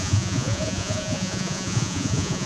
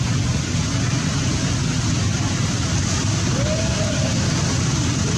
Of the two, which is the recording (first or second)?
second